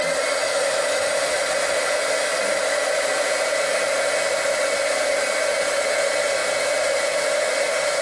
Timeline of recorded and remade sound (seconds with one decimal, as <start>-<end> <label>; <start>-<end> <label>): 0.0-0.4 recorded; 0.4-1.1 remade; 1.1-8.0 recorded